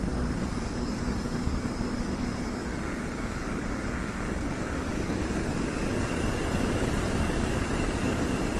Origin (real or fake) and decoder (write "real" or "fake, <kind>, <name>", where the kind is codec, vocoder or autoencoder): fake, codec, DAC